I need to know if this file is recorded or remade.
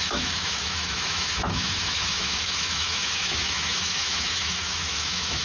remade